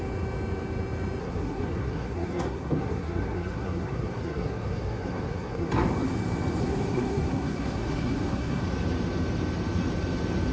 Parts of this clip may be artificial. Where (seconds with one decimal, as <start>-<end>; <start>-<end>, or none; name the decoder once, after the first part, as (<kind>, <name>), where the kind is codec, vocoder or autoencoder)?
1.2-5.7 (codec, SNAC); 6.6-8.6

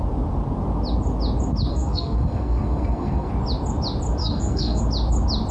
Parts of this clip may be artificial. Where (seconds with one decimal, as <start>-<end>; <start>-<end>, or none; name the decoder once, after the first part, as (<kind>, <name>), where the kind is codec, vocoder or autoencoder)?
1.7-3.3 (codec, SNAC); 4.2-4.8

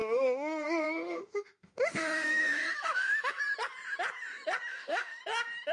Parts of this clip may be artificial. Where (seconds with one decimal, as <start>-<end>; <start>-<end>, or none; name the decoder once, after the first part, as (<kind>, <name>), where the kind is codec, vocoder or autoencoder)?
0.0-3.4 (autoencoder, DAC-VAE); 4.7-5.2

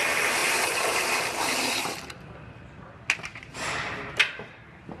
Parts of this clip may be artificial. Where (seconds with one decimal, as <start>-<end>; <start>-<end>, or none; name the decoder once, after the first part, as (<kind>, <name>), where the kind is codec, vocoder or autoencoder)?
0.4-2.0 (vocoder, BigVGAN v2)

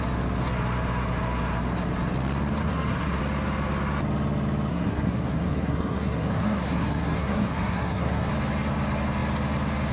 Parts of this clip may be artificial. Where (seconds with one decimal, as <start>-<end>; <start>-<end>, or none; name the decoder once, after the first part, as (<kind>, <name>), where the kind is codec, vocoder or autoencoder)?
2.6-3.2 (codec, SNAC); 4.7-8.3

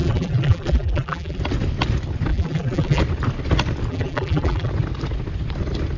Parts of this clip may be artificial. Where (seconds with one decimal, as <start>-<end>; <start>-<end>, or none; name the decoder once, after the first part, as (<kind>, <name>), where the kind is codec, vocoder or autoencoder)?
0.0-1.4 (vocoder, BigVGAN v2); 2.3-3.0; 3.9-4.7

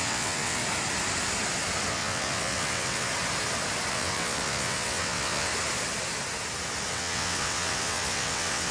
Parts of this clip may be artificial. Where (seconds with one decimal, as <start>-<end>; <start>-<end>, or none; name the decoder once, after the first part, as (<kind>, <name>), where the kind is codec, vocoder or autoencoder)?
0.0-0.6 (vocoder, WaveNeXt); 1.9-3.1; 3.9-5.5; 6.9-8.7

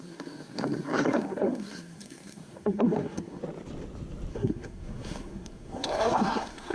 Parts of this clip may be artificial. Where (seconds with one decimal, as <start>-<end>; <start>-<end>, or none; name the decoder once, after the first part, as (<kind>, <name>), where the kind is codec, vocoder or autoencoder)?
0.0-3.4 (codec, SNAC); 4.3-6.7